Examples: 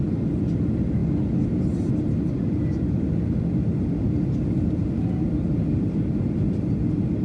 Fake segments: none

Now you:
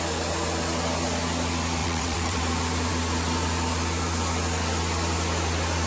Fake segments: 1.8-2.4 (vocoder, WaveNeXt)

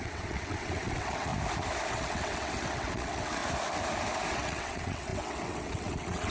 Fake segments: 0.0-1.3 (vocoder, WaveNeXt); 1.9-3.4; 4.3-6.3

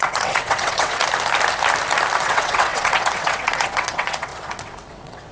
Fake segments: 0.0-1.0 (vocoder, WaveNeXt); 2.2-5.3